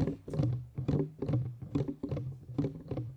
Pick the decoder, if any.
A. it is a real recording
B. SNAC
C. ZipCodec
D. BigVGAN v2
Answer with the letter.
D